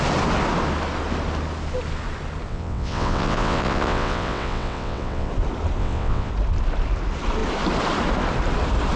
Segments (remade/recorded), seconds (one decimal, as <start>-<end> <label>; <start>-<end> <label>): 0.0-2.5 recorded; 2.5-5.3 remade; 5.3-5.8 recorded; 5.8-6.3 remade; 6.3-9.0 recorded